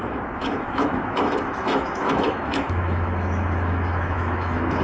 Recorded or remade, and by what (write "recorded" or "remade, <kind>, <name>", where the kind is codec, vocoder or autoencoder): remade, autoencoder, DAC-VAE